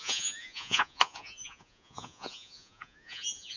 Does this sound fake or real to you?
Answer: fake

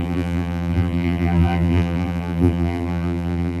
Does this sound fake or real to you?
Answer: fake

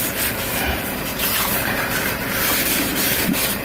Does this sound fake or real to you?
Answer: fake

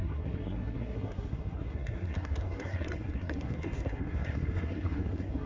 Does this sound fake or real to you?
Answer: fake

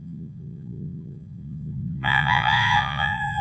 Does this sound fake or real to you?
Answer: fake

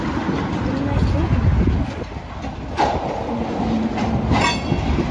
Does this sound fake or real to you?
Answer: real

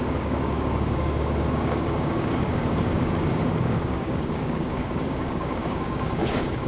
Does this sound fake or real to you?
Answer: fake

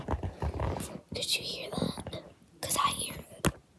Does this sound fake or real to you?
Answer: real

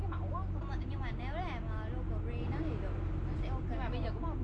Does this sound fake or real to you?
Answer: real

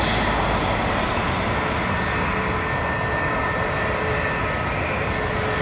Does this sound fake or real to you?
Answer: real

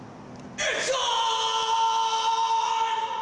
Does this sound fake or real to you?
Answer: real